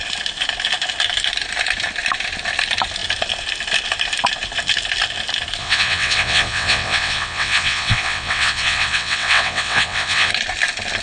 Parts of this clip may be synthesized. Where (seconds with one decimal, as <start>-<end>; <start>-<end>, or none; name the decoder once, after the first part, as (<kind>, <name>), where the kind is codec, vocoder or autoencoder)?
5.6-10.3 (vocoder, WaveNeXt)